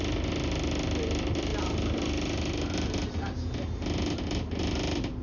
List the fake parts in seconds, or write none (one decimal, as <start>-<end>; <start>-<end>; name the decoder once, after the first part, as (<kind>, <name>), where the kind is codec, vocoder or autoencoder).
none